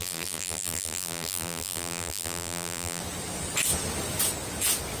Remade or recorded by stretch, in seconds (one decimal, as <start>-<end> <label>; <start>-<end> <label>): 0.0-3.0 remade; 3.0-5.0 recorded